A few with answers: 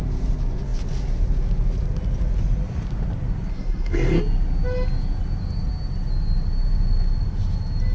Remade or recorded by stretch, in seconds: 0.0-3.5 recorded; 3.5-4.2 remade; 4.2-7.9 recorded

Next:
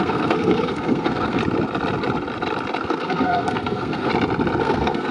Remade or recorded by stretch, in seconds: 0.0-1.4 remade; 1.4-2.8 recorded; 2.8-4.1 remade; 4.1-4.6 recorded; 4.6-5.1 remade

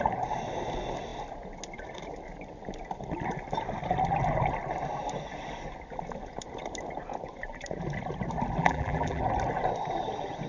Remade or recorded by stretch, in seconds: 0.0-8.6 recorded; 8.6-9.2 remade; 9.2-10.5 recorded